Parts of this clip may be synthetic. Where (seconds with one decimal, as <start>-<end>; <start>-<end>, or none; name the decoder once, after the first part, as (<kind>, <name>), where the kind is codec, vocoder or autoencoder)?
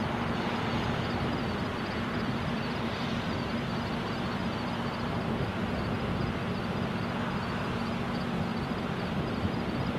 0.6-2.9 (vocoder, BigVGAN v2); 8.5-9.5